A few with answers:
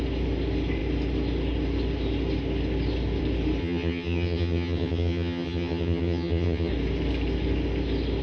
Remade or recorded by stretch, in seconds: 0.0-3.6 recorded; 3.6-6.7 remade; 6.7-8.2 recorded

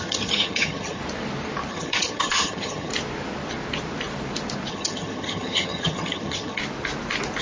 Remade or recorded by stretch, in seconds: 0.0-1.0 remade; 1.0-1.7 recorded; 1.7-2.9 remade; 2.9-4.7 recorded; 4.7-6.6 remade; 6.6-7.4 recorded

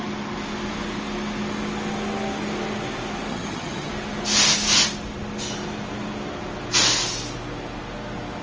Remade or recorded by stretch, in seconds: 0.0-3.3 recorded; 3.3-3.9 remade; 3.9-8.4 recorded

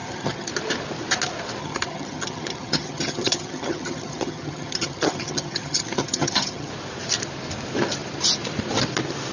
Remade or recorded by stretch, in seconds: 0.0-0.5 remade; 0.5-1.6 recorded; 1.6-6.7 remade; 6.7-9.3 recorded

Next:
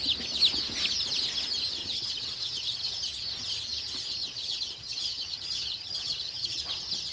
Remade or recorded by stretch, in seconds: 0.0-1.8 recorded; 1.8-2.9 remade; 2.9-4.3 recorded; 4.3-6.6 remade; 6.6-7.1 recorded

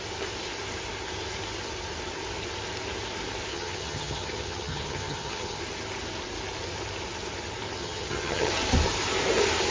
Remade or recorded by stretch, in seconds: 0.0-3.5 recorded; 3.5-5.6 remade; 5.6-7.8 recorded; 7.8-8.5 remade; 8.5-9.7 recorded

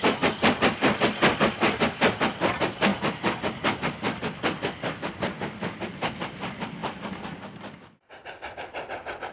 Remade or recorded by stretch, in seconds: 0.0-9.3 recorded

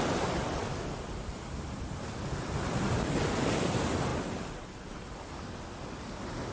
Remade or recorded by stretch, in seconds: 0.0-6.5 recorded